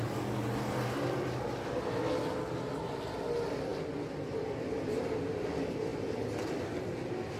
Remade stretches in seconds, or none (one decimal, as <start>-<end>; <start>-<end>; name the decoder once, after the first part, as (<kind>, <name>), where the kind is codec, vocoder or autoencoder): none

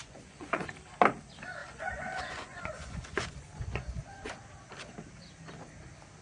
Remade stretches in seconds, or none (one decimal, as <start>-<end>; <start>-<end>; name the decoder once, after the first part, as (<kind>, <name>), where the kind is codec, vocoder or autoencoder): 0.0-0.7 (vocoder, Vocos); 1.6-4.3

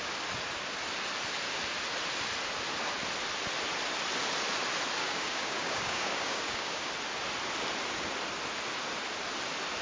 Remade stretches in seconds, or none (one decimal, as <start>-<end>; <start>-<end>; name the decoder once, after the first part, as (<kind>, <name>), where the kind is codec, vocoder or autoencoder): 5.0-6.9 (codec, DAC)

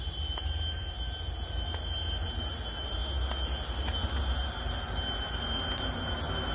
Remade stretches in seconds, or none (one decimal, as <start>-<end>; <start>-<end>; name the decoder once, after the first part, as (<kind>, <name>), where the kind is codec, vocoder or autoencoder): none

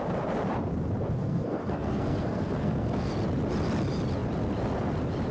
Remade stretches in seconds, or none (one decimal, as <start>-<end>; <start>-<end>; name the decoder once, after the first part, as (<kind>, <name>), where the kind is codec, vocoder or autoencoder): 1.2-3.1 (codec, SNAC)

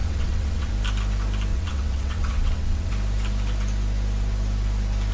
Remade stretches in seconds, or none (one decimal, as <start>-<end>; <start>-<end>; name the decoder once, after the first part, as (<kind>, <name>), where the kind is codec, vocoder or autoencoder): 0.0-0.7 (vocoder, WaveNeXt); 1.5-2.9

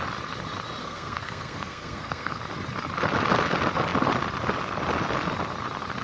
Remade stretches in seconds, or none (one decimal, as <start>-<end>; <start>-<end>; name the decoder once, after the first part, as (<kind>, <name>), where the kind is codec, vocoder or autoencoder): 0.8-2.4 (codec, SNAC)